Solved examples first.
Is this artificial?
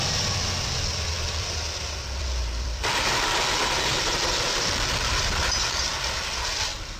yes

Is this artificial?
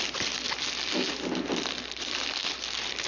no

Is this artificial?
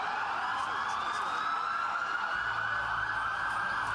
no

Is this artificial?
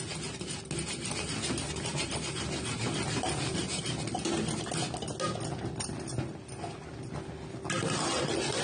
no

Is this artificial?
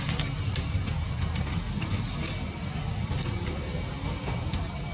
no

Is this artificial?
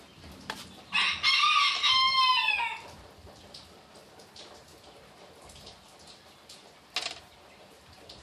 no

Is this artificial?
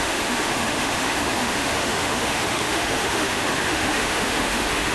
yes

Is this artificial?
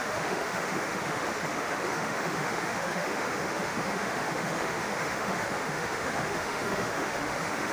yes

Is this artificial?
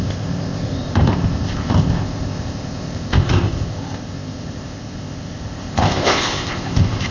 yes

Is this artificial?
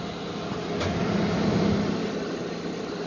no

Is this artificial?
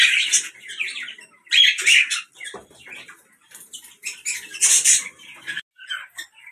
no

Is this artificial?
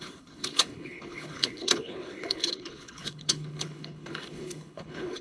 yes